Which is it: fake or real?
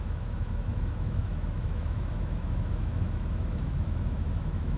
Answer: fake